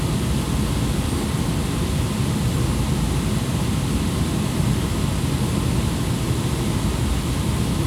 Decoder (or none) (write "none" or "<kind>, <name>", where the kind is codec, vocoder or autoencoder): none